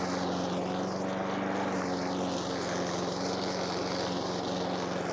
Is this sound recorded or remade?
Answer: recorded